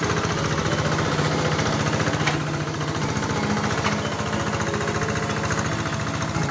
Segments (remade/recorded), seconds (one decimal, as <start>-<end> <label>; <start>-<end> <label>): 0.0-6.5 recorded